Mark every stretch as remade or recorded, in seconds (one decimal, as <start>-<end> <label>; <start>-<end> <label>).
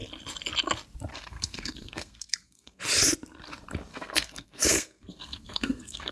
0.0-1.1 recorded; 1.1-2.8 remade; 2.8-3.9 recorded; 3.9-6.1 remade